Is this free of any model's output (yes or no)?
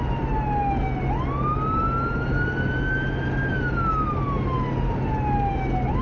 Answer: yes